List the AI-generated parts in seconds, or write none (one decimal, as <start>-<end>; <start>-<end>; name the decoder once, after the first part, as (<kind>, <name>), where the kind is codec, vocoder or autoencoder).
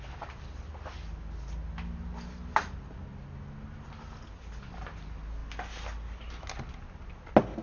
none